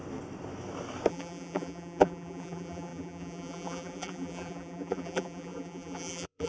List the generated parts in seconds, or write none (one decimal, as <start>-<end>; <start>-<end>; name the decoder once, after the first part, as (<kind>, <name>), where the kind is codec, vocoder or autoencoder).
1.1-6.5 (vocoder, BigVGAN v2)